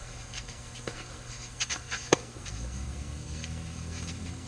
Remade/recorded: remade